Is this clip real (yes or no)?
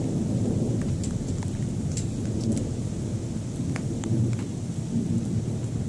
yes